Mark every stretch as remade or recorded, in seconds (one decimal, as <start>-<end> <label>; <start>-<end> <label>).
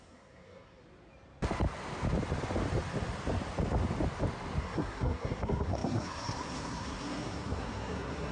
0.0-0.8 remade; 0.8-4.6 recorded; 4.6-8.3 remade